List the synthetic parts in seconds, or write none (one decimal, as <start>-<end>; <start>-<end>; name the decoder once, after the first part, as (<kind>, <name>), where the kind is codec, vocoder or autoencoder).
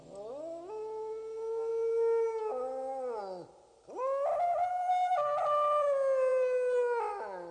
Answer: none